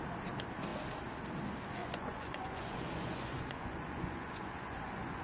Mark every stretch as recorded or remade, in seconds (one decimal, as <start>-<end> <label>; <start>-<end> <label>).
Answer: 0.0-1.8 recorded; 1.8-5.2 remade